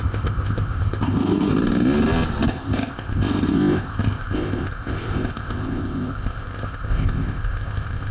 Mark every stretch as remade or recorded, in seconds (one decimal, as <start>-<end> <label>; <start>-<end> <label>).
0.0-1.5 remade; 1.5-2.5 recorded; 2.5-8.1 remade